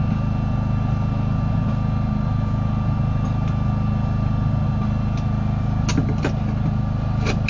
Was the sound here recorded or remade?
recorded